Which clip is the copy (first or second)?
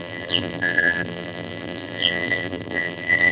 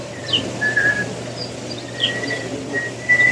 first